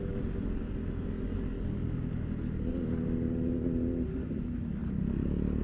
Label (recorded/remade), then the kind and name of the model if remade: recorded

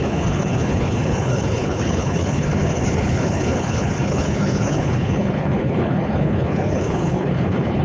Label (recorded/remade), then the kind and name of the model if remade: remade, codec, HILCodec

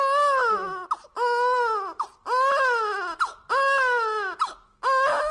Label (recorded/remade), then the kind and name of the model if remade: recorded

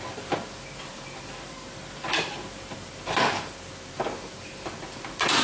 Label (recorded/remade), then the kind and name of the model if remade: recorded